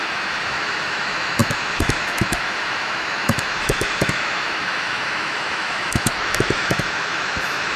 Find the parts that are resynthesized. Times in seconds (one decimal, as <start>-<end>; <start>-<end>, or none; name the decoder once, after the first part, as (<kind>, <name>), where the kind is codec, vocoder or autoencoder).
0.0-7.8 (autoencoder, DAC-VAE)